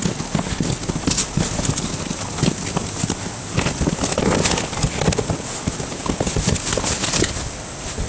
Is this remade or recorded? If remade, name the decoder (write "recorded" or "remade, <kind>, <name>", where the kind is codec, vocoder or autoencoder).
recorded